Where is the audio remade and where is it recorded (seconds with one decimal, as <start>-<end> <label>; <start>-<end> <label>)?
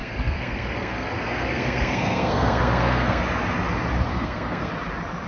0.0-3.2 remade; 3.2-4.1 recorded; 4.1-4.7 remade; 4.7-5.3 recorded